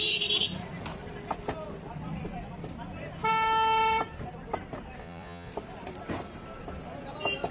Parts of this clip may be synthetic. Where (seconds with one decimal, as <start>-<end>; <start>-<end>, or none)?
5.0-5.5